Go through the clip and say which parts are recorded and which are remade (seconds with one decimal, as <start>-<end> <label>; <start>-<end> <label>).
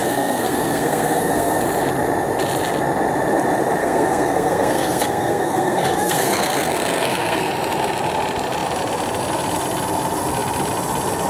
0.0-1.6 remade; 1.6-3.8 recorded; 3.8-7.5 remade; 7.5-11.3 recorded